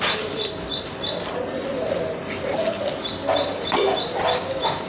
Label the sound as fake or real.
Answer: real